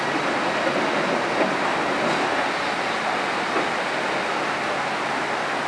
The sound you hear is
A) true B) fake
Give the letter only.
A